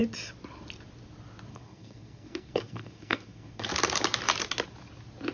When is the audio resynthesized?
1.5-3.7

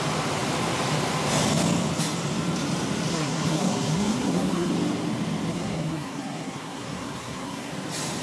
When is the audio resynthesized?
3.1-4.7; 5.5-7.7

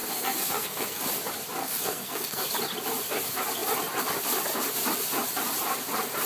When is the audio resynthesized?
0.0-1.0; 1.6-2.5